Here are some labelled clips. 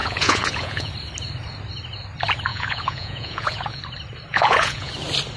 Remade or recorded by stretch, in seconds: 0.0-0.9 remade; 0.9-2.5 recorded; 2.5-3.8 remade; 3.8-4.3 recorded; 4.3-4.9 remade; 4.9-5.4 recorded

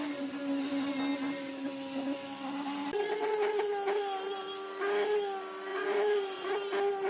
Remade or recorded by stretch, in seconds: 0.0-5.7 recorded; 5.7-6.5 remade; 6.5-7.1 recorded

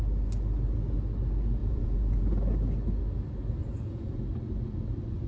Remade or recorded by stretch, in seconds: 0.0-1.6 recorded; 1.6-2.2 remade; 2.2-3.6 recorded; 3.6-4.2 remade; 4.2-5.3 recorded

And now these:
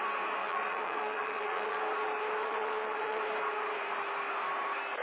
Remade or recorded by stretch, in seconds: 0.0-0.4 recorded; 0.4-1.8 remade; 1.8-2.4 recorded; 2.4-3.2 remade; 3.2-5.0 recorded

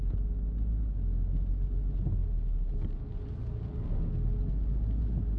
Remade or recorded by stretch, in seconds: 0.0-5.4 recorded

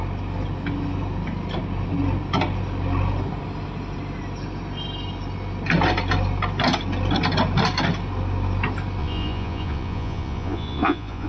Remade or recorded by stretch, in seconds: 0.0-9.0 recorded; 9.0-11.3 remade

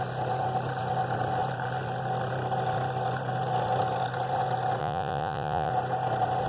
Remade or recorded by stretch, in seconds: 0.0-4.8 recorded; 4.8-5.7 remade; 5.7-6.5 recorded